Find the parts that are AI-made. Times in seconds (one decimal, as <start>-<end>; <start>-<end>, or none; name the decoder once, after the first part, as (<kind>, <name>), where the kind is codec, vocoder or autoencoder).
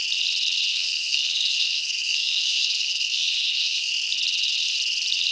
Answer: 0.7-3.9 (codec, SNAC)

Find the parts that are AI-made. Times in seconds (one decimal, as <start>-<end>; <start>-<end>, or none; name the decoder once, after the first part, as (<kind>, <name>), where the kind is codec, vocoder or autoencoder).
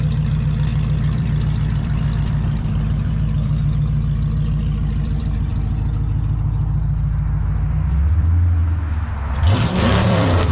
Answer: 0.0-5.5 (vocoder, BigVGAN v2); 8.2-8.6; 9.3-10.5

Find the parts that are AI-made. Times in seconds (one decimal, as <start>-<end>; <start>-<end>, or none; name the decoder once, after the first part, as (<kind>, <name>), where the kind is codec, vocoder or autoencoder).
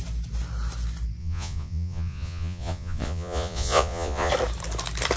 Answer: 1.2-4.3 (vocoder, Vocos)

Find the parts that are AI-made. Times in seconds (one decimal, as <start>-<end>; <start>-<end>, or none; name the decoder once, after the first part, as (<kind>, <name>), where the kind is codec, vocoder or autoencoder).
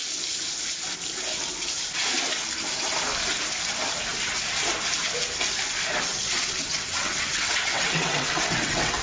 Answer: 6.1-9.0 (vocoder, WaveNeXt)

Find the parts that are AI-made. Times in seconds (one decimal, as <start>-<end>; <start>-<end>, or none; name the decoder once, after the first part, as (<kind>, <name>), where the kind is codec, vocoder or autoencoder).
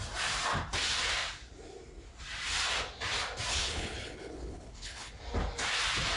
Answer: 3.5-5.1 (codec, HILCodec)